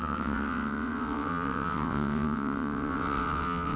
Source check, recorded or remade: remade